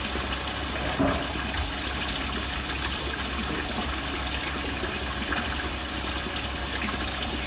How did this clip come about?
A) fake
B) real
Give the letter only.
B